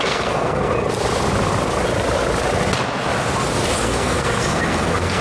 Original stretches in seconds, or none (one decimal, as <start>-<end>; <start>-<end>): 0.7-3.8